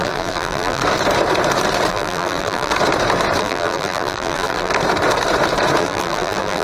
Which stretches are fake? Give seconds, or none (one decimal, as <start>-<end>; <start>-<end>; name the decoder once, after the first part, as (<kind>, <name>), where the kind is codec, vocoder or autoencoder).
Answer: 0.0-0.8 (vocoder, BigVGAN v2); 1.9-2.7; 3.4-4.7; 5.8-6.6